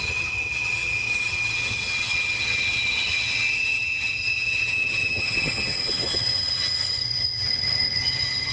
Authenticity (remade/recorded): remade